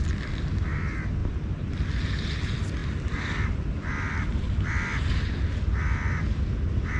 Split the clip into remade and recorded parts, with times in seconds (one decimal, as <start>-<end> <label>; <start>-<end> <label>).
0.0-7.0 recorded